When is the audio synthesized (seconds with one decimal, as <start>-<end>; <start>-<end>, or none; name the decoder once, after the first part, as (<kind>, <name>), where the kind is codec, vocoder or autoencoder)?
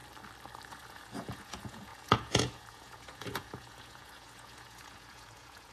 0.7-5.7 (vocoder, Vocos)